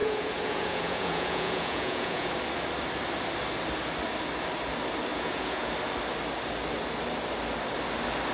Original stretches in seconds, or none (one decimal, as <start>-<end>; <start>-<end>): 2.3-5.1; 5.7-8.3